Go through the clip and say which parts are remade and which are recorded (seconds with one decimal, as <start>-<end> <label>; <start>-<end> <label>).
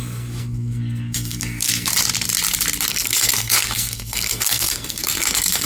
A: 0.0-1.9 remade; 1.9-2.9 recorded; 2.9-5.7 remade